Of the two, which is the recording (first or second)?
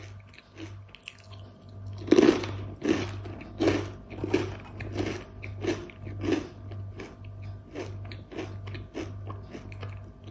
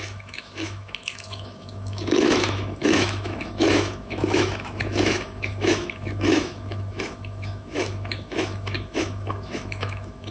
first